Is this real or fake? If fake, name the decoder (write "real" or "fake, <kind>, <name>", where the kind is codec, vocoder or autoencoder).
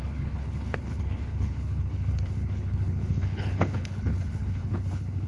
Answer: fake, codec, HILCodec